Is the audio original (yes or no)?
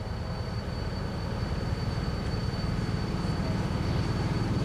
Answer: no